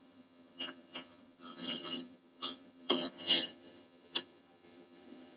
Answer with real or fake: fake